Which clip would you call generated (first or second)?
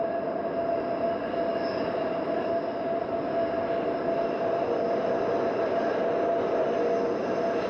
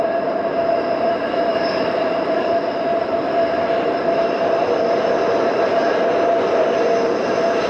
second